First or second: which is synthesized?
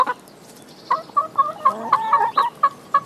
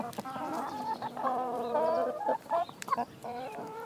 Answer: second